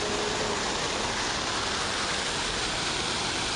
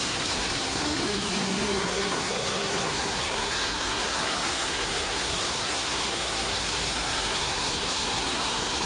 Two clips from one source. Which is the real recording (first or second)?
first